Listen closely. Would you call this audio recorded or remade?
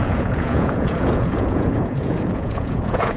remade